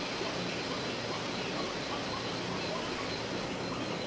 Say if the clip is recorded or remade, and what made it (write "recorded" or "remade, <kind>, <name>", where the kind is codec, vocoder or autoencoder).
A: recorded